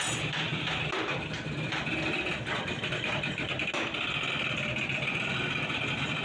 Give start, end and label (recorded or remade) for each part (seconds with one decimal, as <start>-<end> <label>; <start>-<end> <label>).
0.0-6.2 recorded